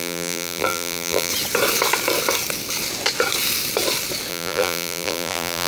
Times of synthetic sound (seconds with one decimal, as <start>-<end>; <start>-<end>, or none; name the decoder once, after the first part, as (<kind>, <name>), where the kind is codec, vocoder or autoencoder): 0.0-1.3 (vocoder, BigVGAN v2); 4.3-5.7